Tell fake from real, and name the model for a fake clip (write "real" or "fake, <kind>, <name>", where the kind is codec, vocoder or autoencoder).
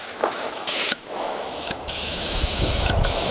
fake, autoencoder, DAC-VAE